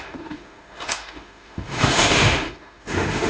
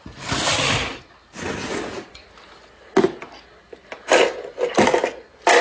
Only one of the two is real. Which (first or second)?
second